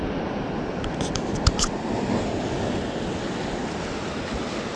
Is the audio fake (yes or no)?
no